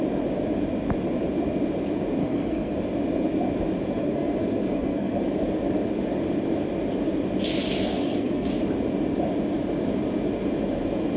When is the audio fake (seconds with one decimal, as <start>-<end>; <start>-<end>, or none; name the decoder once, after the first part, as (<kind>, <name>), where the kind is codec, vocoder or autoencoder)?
2.2-2.8 (codec, SNAC); 4.0-5.2; 7.9-8.5